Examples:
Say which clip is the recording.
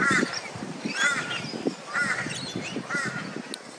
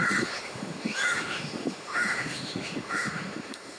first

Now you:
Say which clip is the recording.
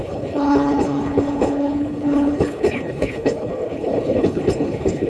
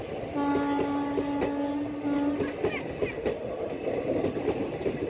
second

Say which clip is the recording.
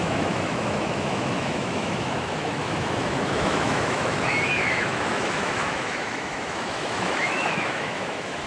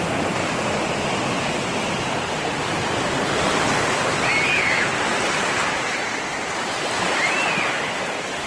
second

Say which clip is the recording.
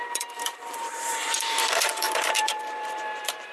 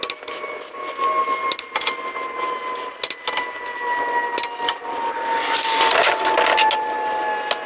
second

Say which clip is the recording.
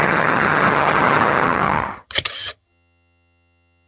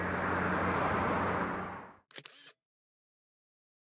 second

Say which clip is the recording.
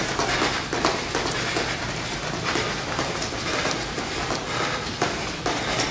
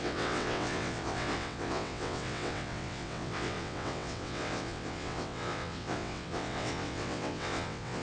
first